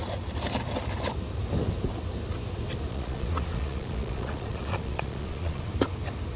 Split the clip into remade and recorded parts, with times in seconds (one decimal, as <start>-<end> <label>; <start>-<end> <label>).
0.0-2.9 recorded; 2.9-5.7 remade; 5.7-6.4 recorded